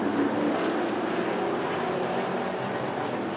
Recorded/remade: recorded